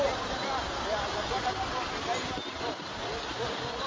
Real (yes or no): yes